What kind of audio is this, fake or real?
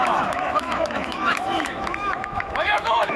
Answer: fake